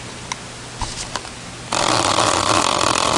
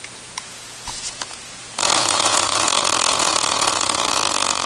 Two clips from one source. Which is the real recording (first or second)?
first